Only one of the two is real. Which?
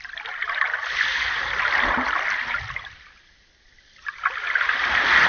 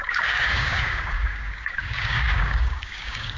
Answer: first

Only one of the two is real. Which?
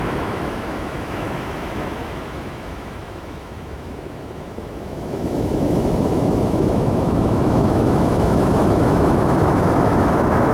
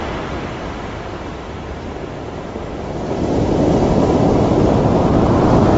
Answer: second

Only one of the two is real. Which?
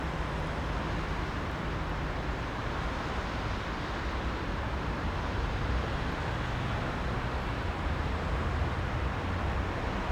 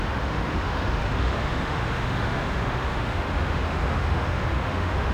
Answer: first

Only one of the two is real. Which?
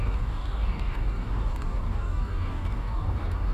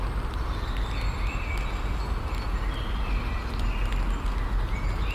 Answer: second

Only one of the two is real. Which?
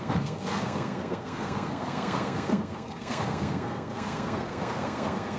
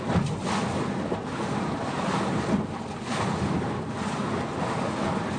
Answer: second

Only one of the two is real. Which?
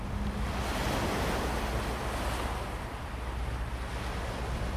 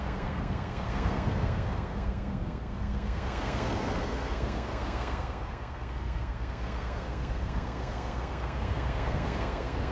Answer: first